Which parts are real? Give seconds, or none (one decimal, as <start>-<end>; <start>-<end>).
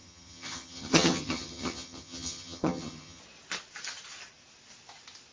3.2-5.3